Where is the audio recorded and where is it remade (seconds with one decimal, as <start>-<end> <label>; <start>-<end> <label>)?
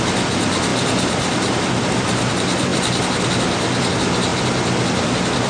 0.0-5.5 recorded